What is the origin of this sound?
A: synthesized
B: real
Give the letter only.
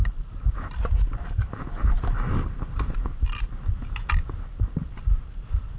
B